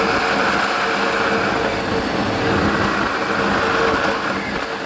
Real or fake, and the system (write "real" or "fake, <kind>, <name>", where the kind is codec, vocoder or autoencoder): real